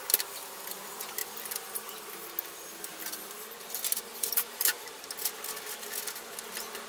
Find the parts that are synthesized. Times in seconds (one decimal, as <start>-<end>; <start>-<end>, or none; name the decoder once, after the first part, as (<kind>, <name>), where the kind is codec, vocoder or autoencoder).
4.1-5.0 (vocoder, BigVGAN v2)